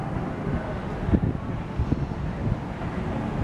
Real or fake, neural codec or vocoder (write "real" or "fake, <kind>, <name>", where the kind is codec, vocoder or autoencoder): real